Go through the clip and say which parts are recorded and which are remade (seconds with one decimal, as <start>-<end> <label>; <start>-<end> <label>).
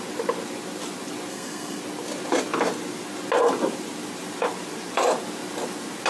0.0-1.3 recorded; 1.3-1.8 remade; 1.8-6.1 recorded